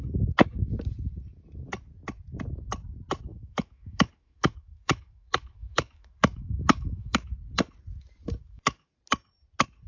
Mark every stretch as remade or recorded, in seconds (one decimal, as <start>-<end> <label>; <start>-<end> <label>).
0.0-3.3 recorded; 3.3-7.3 remade; 7.3-8.4 recorded; 8.4-8.9 remade; 8.9-9.9 recorded